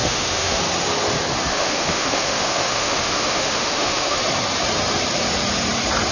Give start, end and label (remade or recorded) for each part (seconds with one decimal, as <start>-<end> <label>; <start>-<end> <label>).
0.0-0.6 remade; 0.6-1.5 recorded; 1.5-4.2 remade; 4.2-6.1 recorded